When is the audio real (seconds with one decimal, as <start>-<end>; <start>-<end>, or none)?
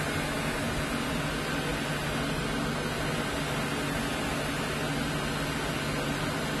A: 0.0-6.6